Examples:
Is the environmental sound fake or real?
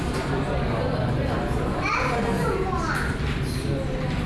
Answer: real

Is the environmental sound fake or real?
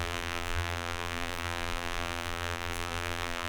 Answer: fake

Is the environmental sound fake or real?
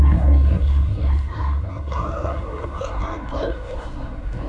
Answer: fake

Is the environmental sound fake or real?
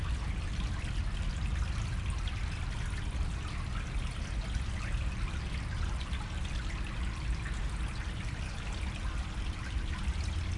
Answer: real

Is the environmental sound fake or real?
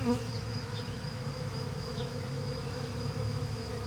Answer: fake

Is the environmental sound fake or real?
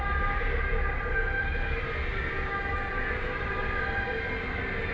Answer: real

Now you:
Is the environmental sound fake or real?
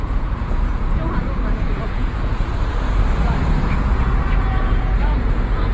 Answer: fake